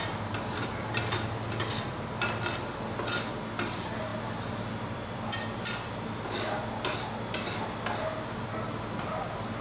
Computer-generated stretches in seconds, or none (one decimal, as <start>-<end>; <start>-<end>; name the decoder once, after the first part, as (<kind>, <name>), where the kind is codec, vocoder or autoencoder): 0.0-0.5 (vocoder, BigVGAN v2)